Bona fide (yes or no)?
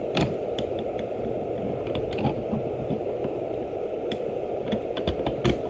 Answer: yes